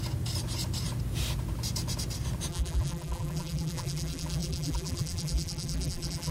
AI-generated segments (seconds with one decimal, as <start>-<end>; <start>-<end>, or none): 2.5-6.3